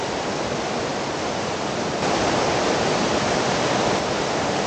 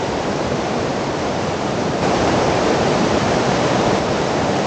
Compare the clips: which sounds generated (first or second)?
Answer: second